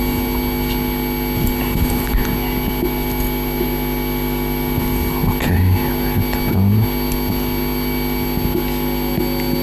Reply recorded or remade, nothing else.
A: recorded